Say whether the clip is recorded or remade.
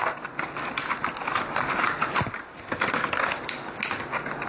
recorded